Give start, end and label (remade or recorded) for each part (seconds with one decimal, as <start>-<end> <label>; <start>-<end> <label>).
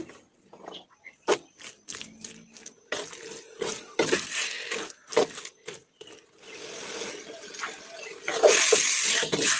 0.0-9.6 recorded